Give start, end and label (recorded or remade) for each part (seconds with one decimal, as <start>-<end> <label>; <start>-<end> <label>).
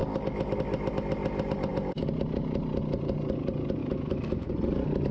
0.0-3.8 recorded; 3.8-4.5 remade; 4.5-5.1 recorded